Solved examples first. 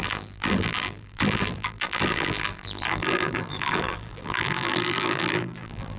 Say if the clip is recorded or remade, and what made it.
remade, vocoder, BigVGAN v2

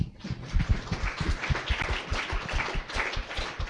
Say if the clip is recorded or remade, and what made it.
recorded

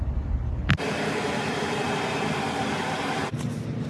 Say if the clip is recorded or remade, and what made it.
recorded